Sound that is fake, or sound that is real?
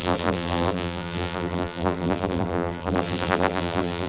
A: fake